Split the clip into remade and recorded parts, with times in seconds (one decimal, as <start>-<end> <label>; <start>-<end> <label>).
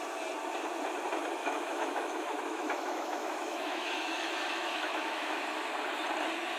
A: 0.0-1.4 recorded; 1.4-5.4 remade; 5.4-6.6 recorded